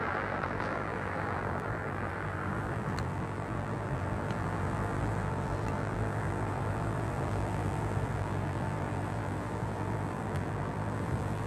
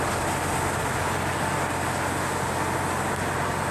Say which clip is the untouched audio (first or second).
second